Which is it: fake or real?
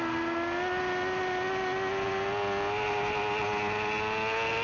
real